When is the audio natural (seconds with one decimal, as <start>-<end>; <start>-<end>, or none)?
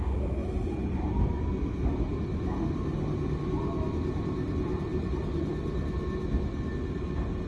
0.0-0.4; 1.3-7.5